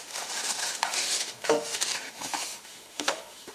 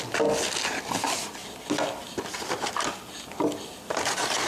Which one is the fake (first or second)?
first